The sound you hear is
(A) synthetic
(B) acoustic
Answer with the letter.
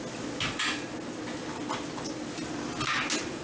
B